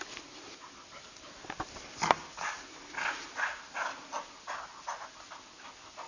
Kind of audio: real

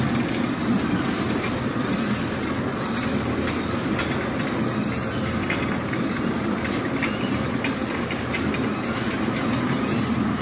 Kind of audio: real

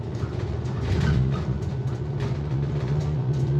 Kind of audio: fake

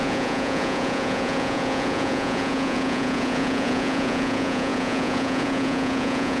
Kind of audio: fake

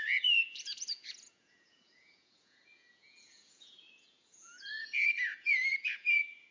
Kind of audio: fake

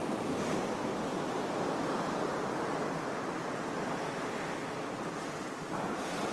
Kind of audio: real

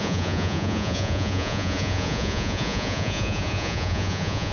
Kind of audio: fake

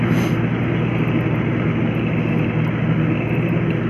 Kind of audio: real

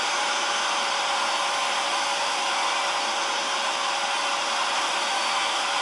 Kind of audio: real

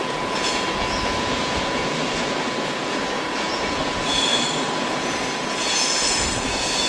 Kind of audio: fake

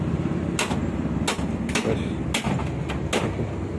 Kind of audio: real